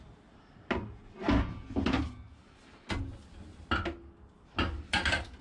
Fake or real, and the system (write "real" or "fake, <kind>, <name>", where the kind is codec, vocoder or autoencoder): real